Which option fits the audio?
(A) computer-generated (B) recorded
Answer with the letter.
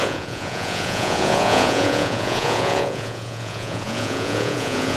A